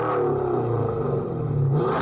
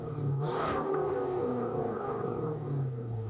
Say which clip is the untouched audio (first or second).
first